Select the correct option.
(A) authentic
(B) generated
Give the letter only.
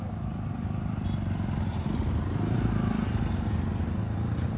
B